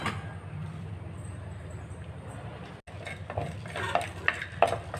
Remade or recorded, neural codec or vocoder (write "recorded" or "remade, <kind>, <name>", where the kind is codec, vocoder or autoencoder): recorded